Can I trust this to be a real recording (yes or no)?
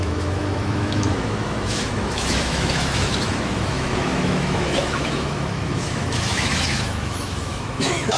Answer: no